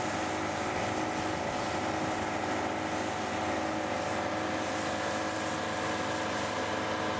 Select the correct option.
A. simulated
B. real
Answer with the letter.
B